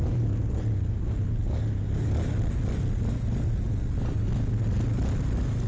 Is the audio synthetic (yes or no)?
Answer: no